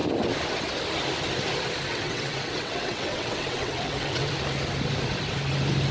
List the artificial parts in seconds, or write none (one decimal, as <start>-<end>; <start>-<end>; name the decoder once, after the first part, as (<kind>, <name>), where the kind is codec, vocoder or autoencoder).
1.9-4.3 (vocoder, WaveNeXt)